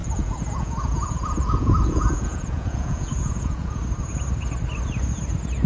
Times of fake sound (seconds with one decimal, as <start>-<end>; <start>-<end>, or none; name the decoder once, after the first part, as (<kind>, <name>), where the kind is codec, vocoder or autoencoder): 0.0-3.8 (vocoder, Vocos)